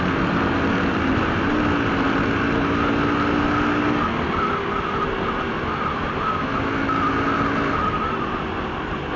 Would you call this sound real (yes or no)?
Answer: yes